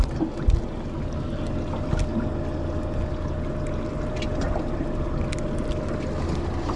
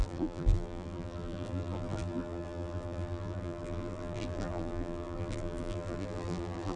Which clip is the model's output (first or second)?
second